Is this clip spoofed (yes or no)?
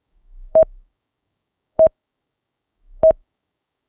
yes